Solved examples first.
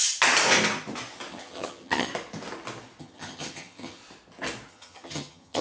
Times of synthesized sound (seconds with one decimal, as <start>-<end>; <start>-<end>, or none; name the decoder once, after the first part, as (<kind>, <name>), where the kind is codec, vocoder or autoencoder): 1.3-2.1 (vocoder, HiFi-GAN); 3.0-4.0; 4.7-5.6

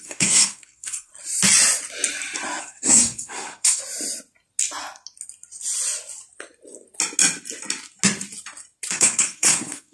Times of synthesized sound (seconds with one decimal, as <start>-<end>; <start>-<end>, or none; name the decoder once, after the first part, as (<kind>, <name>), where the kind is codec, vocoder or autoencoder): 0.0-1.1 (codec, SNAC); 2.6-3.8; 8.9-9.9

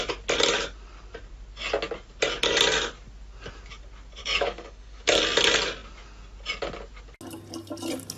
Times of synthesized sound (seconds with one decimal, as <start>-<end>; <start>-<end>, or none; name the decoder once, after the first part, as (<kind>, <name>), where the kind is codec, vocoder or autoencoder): 4.2-5.2 (codec, DAC)

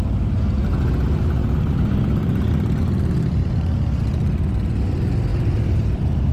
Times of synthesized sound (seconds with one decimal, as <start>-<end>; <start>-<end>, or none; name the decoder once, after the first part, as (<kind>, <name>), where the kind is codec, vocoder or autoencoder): 1.4-2.8 (vocoder, BigVGAN v2); 3.4-4.0; 5.3-6.3

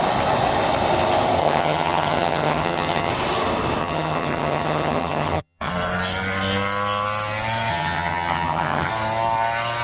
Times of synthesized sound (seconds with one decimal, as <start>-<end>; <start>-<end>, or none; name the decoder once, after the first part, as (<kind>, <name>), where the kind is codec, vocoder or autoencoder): 1.4-3.1 (vocoder, HiFi-GAN); 3.8-5.7; 7.7-8.9

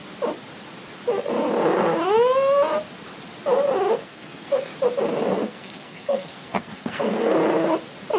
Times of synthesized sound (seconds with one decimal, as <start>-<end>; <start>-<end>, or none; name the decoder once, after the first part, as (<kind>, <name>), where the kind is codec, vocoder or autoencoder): 3.9-4.7 (codec, SNAC); 5.3-7.3

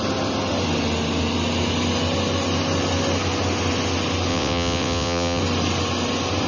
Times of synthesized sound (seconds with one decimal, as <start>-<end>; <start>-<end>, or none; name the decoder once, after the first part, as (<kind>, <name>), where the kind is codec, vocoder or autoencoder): 4.3-5.4 (vocoder, WaveNeXt)

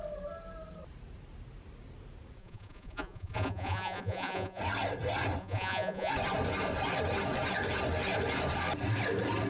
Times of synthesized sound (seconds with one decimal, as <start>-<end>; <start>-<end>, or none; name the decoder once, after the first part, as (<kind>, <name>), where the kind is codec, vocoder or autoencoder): 2.4-4.6 (vocoder, Vocos); 5.4-6.1